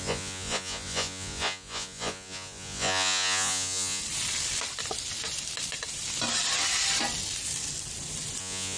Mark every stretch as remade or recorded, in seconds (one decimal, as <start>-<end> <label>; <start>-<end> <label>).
0.0-4.0 remade; 4.0-8.4 recorded; 8.4-8.8 remade